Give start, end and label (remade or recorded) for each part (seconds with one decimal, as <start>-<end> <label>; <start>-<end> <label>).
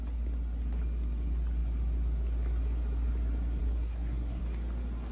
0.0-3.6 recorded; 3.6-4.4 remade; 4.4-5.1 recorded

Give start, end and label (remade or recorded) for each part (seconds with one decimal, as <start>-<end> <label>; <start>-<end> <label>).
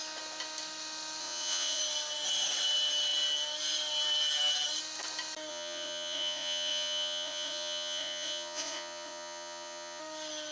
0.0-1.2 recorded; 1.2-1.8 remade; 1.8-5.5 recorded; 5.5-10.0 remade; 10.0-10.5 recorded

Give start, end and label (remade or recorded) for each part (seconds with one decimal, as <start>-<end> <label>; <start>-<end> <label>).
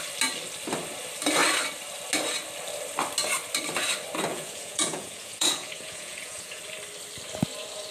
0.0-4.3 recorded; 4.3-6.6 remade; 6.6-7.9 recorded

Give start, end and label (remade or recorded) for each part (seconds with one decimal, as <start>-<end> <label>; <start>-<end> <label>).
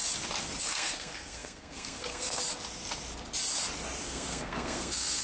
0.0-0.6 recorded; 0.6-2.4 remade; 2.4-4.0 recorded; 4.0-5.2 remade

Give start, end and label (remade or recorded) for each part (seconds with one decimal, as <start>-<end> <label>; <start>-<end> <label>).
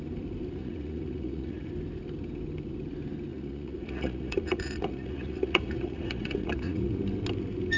0.0-0.6 recorded; 0.6-1.7 remade; 1.7-3.3 recorded; 3.3-7.0 remade; 7.0-7.8 recorded